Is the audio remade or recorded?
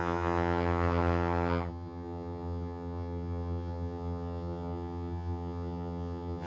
remade